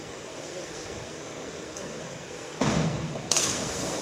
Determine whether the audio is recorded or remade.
remade